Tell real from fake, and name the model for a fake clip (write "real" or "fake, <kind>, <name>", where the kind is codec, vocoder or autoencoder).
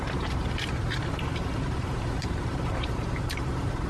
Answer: fake, vocoder, BigVGAN v2